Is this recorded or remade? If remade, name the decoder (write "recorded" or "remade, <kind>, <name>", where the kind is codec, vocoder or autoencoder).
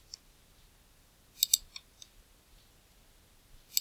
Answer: recorded